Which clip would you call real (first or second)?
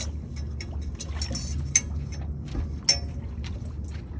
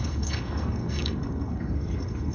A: first